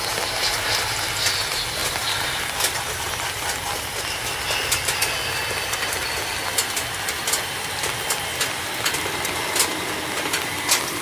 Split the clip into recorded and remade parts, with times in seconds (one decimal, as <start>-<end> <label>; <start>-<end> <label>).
0.0-11.0 recorded